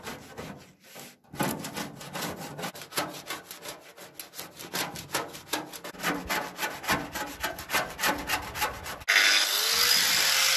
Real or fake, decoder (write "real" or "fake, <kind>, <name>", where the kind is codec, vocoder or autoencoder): real